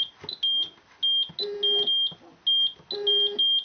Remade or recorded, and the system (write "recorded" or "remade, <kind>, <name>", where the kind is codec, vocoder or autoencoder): recorded